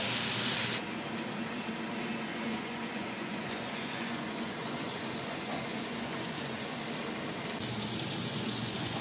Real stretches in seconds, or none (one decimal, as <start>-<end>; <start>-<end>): 0.0-2.3; 6.8-8.2